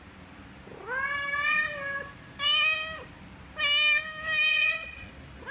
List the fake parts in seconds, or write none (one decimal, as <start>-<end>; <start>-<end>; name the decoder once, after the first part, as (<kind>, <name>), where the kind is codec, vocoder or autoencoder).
4.5-5.1 (vocoder, Vocos)